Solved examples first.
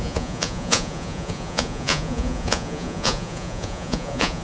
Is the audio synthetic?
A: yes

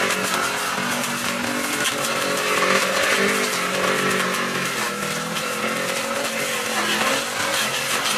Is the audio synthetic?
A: no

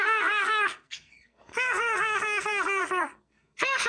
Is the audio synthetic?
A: yes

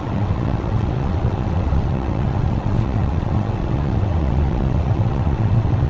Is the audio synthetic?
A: yes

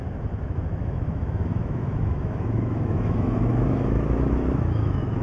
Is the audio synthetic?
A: yes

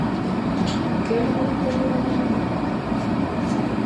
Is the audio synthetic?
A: yes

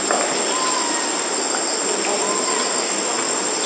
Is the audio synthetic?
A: no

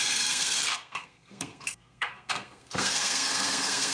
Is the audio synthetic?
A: yes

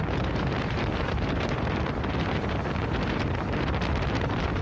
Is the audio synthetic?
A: yes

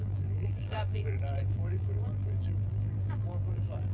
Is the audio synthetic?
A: yes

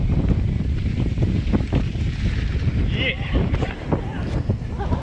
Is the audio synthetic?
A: no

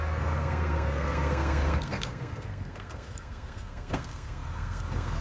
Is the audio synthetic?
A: yes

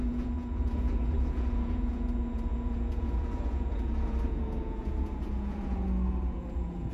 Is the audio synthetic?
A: yes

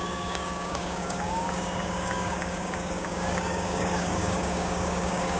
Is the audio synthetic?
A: yes